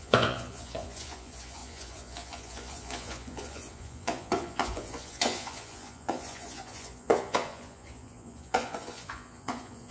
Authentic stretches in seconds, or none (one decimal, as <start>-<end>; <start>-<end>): none